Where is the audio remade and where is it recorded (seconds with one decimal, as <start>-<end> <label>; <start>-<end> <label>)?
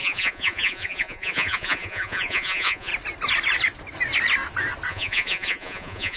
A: 0.0-2.9 remade; 2.9-4.9 recorded; 4.9-6.2 remade